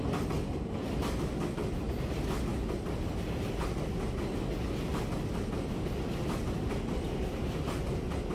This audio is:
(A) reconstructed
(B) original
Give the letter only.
B